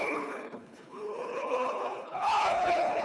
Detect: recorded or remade remade